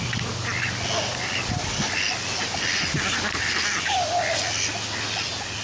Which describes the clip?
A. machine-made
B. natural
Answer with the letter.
B